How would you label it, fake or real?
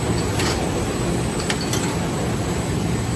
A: real